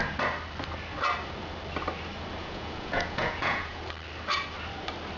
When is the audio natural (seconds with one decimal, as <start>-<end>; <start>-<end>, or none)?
0.0-2.4; 3.8-5.2